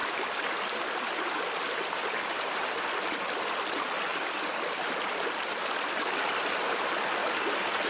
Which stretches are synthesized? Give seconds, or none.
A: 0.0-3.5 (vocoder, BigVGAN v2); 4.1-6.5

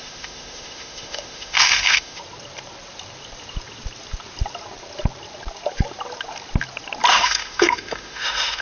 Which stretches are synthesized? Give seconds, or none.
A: 0.0-2.2 (autoencoder, DAC-VAE); 7.1-8.6

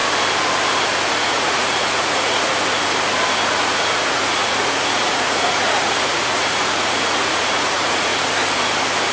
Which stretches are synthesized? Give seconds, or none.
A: 1.1-2.5 (vocoder, Vocos); 3.5-8.1

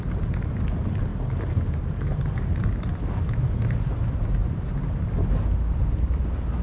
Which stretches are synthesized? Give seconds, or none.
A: 4.4-5.0 (vocoder, BigVGAN v2)